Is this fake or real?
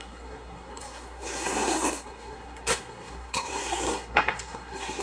fake